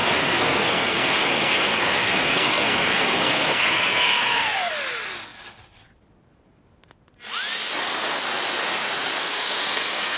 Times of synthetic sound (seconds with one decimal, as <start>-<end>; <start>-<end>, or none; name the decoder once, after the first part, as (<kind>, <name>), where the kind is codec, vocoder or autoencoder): 0.0-4.7 (codec, SNAC); 9.2-10.2